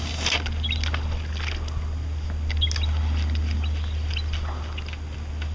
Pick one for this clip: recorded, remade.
recorded